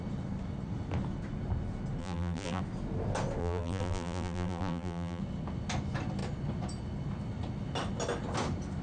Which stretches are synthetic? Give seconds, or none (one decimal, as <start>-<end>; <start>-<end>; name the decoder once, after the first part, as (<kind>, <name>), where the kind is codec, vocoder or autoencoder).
2.0-2.6 (vocoder, BigVGAN v2); 3.4-5.2